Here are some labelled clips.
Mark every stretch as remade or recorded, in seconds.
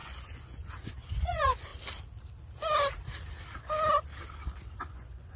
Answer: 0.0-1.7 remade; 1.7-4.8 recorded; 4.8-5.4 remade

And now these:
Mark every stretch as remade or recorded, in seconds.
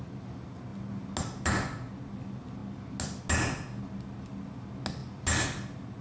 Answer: 0.0-6.0 recorded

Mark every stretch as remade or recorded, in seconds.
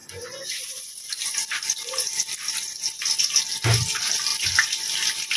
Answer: 0.0-1.0 remade; 1.0-5.4 recorded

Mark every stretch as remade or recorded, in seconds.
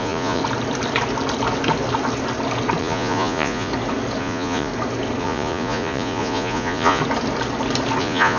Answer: 0.0-0.4 remade; 0.4-2.8 recorded; 2.8-3.7 remade; 3.7-4.2 recorded; 4.2-4.7 remade; 4.7-5.2 recorded; 5.2-7.0 remade; 7.0-8.0 recorded; 8.0-8.4 remade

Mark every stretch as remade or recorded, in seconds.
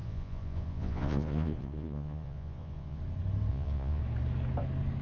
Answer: 0.0-3.0 remade; 3.0-3.5 recorded; 3.5-4.0 remade; 4.0-5.0 recorded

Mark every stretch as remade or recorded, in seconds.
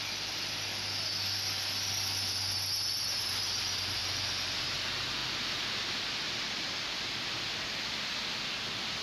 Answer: 0.0-9.0 recorded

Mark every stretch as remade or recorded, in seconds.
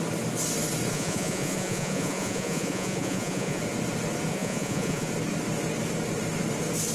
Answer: 0.0-0.9 recorded; 0.9-3.6 remade; 3.6-4.3 recorded; 4.3-5.1 remade; 5.1-6.9 recorded